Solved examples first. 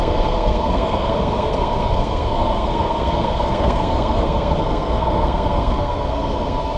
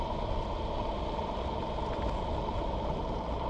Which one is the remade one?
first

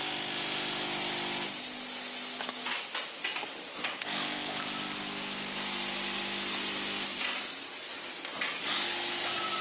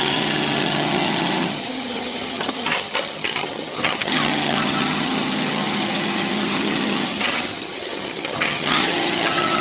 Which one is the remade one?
second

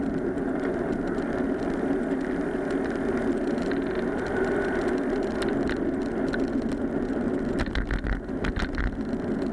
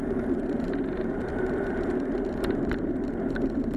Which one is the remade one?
second